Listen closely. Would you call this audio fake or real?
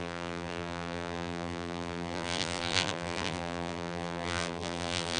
fake